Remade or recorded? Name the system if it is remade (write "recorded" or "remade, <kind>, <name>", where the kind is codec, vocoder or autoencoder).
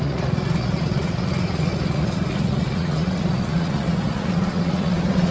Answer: remade, vocoder, Vocos